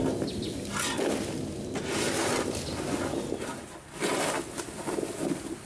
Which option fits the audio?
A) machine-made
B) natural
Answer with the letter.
B